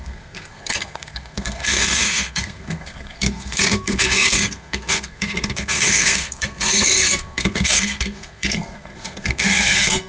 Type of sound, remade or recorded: remade